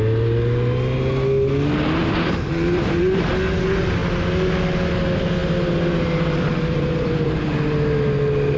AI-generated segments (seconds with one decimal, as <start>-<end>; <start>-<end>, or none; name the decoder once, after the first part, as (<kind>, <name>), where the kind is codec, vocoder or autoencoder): 2.0-3.3 (vocoder, BigVGAN v2); 5.4-7.6